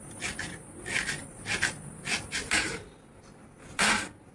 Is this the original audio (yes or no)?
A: yes